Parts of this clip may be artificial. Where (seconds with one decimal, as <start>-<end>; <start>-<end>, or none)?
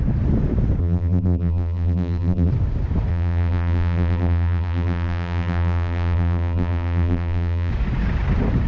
0.8-2.5; 3.1-7.7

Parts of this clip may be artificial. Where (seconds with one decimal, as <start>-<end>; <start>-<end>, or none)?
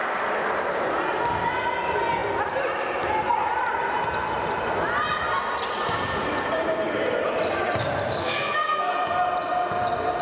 8.2-8.9